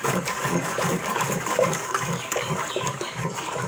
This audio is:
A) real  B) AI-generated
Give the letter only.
B